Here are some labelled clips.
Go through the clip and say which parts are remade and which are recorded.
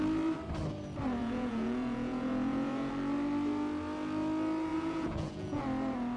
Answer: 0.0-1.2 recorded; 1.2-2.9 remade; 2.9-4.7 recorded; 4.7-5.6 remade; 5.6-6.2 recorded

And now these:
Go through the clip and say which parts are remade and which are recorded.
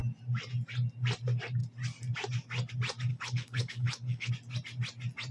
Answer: 0.0-3.1 recorded; 3.1-4.3 remade; 4.3-5.3 recorded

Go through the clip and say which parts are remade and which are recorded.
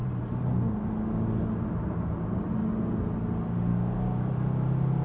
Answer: 0.0-3.7 recorded; 3.7-4.3 remade; 4.3-5.0 recorded